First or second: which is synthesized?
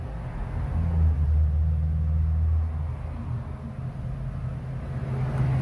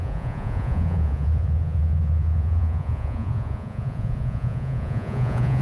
second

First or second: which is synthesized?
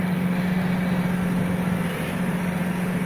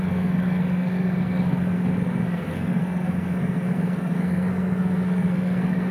second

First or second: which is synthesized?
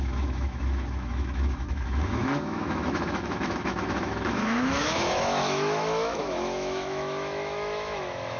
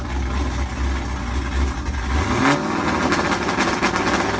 first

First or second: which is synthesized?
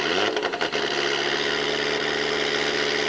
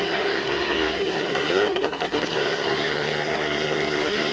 second